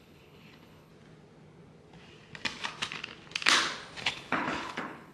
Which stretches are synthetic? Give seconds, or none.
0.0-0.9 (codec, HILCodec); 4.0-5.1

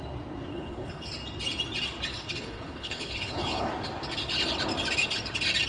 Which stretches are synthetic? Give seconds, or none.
0.5-1.1 (codec, HILCodec); 2.1-3.7

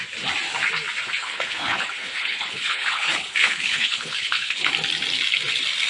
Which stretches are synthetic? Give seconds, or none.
1.2-4.7 (codec, HILCodec)

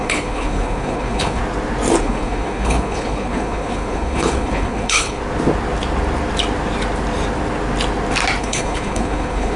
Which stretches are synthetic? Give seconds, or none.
0.0-1.4 (codec, HILCodec); 2.0-5.2; 8.4-9.6

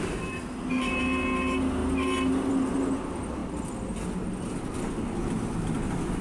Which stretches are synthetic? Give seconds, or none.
none

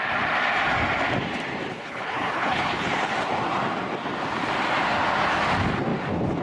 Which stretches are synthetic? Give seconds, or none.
1.7-2.9 (codec, HILCodec)

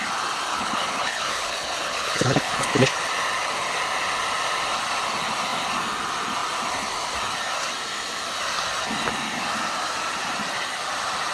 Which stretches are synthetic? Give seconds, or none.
0.5-3.1 (codec, HILCodec)

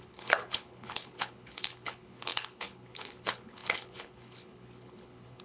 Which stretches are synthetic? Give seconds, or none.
0.0-5.4 (codec, HILCodec)